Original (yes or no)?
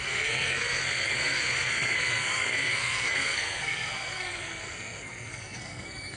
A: no